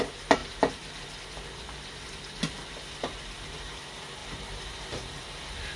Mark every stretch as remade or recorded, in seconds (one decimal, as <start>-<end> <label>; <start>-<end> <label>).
0.0-0.4 recorded; 0.4-1.1 remade; 1.1-5.8 recorded